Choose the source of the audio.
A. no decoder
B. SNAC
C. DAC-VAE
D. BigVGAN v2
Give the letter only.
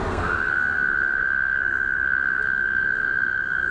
B